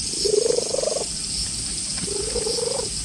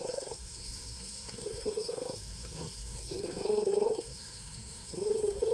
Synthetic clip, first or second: second